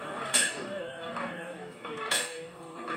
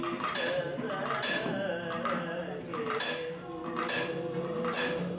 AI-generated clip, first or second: first